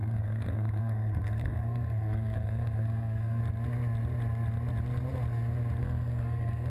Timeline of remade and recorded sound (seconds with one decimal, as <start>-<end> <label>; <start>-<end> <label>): 0.0-3.4 remade; 3.4-5.8 recorded; 5.8-6.7 remade